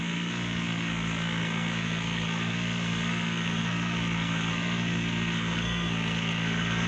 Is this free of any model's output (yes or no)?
no